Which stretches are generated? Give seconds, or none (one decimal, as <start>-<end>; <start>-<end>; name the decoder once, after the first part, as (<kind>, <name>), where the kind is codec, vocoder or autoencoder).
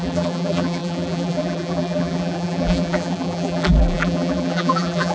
0.0-5.1 (vocoder, BigVGAN v2)